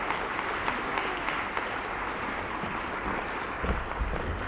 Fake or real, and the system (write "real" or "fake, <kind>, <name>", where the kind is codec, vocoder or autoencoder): real